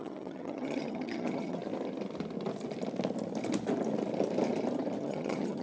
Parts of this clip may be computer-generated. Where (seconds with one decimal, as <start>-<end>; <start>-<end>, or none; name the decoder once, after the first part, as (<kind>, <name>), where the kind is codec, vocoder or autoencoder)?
0.0-1.6 (vocoder, HiFi-GAN); 5.0-5.6